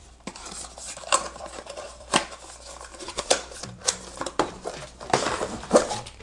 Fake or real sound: fake